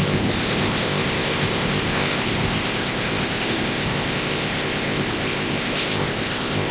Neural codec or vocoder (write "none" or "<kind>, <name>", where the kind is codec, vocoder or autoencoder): codec, ZipCodec